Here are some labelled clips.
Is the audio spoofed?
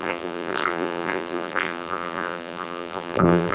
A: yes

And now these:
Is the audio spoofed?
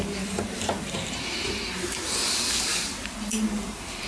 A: yes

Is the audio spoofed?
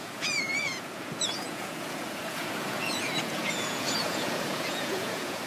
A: yes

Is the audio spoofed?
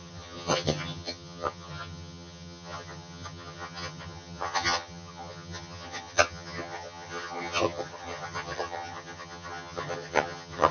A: yes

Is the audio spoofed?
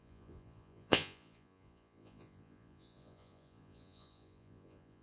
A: yes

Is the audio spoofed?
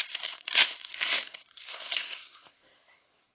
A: yes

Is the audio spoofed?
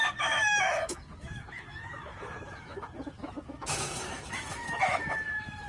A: yes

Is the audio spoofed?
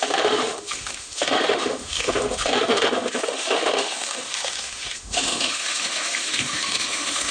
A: yes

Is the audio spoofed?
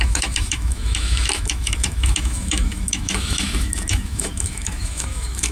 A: yes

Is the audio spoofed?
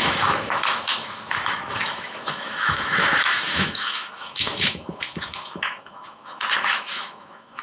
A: yes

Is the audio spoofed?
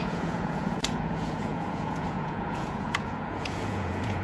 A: yes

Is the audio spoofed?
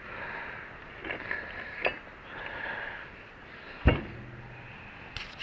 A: no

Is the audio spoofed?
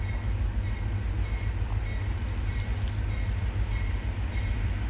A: no